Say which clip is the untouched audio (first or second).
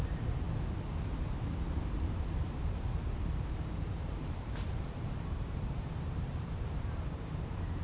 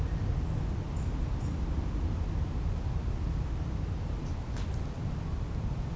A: second